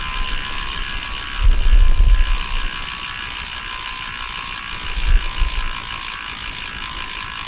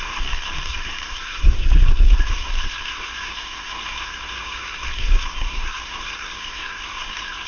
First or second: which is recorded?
first